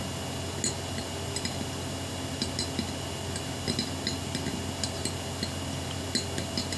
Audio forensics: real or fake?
real